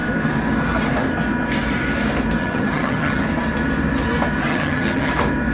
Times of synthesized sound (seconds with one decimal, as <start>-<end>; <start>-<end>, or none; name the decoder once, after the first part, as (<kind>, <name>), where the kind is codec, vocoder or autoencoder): 2.4-3.2 (vocoder, HiFi-GAN); 4.5-5.1